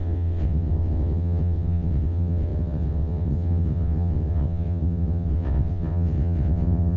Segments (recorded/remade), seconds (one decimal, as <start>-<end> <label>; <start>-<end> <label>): 0.0-7.0 remade